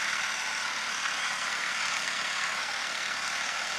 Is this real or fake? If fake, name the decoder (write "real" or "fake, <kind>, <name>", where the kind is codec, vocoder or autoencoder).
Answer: fake, codec, SNAC